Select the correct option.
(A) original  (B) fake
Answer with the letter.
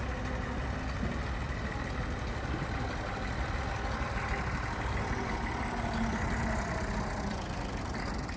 A